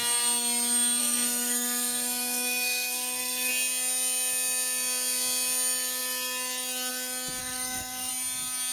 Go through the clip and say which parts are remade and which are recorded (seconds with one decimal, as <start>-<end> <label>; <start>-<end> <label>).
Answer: 0.0-1.0 recorded; 1.0-3.5 remade; 3.5-7.4 recorded; 7.4-8.1 remade; 8.1-8.7 recorded